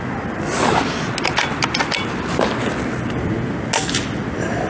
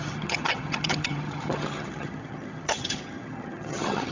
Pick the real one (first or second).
first